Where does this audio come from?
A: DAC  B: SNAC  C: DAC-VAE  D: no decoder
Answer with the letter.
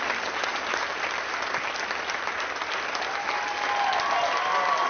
D